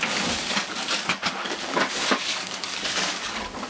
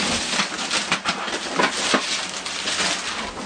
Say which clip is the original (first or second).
second